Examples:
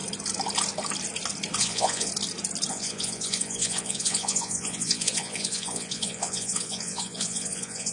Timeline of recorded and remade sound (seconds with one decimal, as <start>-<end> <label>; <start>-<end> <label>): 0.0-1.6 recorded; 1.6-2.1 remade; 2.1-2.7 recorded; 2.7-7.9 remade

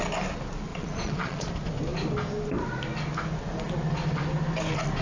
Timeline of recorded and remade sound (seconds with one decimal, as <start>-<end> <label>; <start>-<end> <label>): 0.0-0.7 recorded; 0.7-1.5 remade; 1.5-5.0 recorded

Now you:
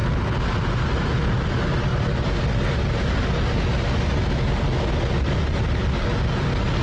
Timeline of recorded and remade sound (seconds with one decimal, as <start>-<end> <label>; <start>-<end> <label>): 0.0-6.8 recorded

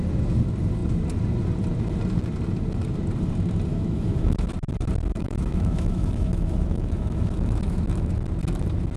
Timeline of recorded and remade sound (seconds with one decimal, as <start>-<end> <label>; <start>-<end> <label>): 0.0-3.7 recorded; 3.7-4.5 remade; 4.5-5.1 recorded; 5.1-8.1 remade; 8.1-9.0 recorded

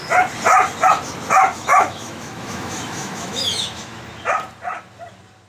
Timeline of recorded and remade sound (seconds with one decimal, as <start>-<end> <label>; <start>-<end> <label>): 0.0-1.5 recorded; 1.5-4.0 remade; 4.0-5.5 recorded

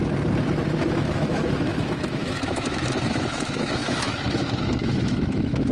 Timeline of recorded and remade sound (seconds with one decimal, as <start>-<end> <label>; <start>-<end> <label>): 0.0-0.8 recorded; 0.8-5.7 remade

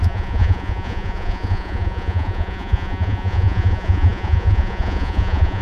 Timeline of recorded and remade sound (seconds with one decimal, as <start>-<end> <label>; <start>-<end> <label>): 0.0-5.6 remade